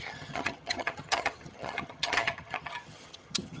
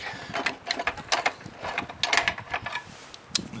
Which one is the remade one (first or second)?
first